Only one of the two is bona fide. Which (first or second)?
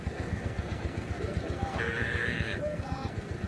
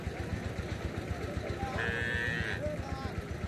second